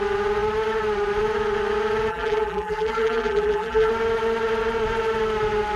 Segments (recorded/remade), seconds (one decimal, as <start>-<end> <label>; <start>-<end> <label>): 0.0-2.1 recorded; 2.1-3.9 remade; 3.9-5.8 recorded